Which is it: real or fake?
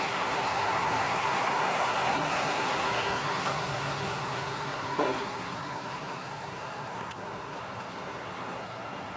fake